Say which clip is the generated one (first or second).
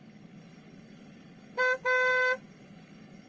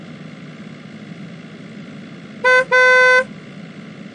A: first